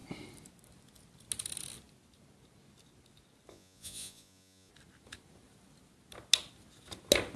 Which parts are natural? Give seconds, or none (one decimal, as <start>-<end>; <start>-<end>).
0.0-3.5; 4.7-7.4